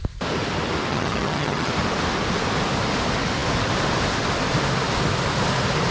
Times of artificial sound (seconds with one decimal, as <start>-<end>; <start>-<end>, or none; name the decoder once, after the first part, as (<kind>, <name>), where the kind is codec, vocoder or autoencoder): 0.9-1.7 (vocoder, HiFi-GAN)

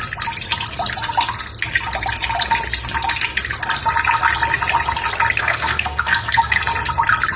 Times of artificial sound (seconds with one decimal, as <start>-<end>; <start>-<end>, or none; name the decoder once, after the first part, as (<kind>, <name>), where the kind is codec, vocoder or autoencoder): 5.4-6.6 (codec, SNAC)

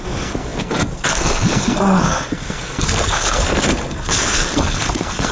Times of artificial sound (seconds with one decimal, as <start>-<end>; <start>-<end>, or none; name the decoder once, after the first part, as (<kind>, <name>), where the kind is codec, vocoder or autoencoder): 0.0-5.3 (codec, SNAC)